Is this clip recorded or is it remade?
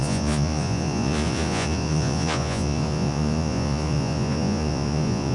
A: remade